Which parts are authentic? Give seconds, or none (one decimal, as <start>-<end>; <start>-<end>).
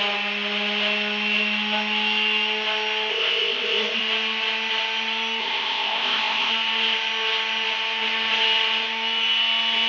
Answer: 0.0-3.1; 4.0-5.4; 6.5-9.9